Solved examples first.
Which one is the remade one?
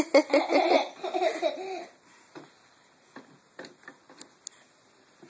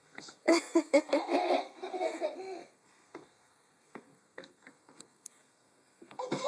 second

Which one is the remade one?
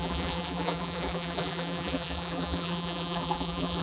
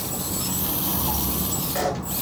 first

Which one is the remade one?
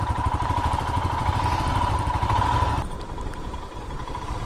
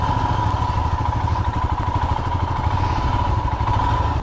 first